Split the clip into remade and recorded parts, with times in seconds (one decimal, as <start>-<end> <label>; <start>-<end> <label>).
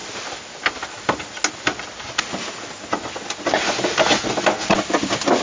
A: 0.0-5.4 recorded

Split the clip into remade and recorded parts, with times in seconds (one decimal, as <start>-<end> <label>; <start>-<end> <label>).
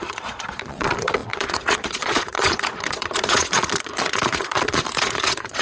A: 0.0-5.6 remade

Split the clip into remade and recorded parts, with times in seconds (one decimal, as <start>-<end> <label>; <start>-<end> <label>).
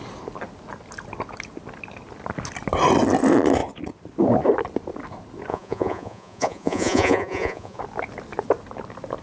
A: 0.0-5.5 recorded; 5.5-7.8 remade; 7.8-9.2 recorded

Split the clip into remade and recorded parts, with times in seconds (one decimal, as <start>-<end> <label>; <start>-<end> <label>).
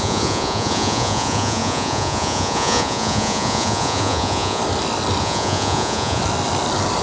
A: 0.0-4.6 remade; 4.6-5.2 recorded; 5.2-6.2 remade; 6.2-7.0 recorded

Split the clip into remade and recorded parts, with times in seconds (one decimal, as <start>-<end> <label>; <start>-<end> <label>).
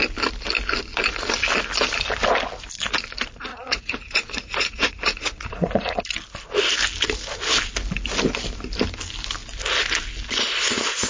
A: 0.0-3.5 recorded; 3.5-6.0 remade; 6.0-11.1 recorded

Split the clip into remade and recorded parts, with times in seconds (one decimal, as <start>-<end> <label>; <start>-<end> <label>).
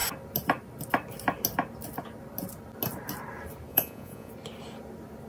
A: 0.0-3.7 recorded; 3.7-4.3 remade; 4.3-5.3 recorded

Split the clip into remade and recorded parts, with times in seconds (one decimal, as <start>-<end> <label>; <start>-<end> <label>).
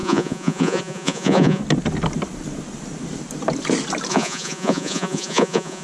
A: 0.0-1.6 remade; 1.6-4.1 recorded; 4.1-5.8 remade